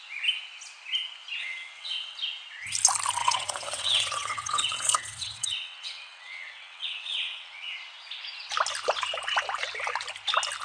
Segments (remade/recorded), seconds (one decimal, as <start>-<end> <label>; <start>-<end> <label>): 0.0-1.4 recorded; 1.4-2.2 remade; 2.2-3.2 recorded; 3.2-7.7 remade; 7.7-10.6 recorded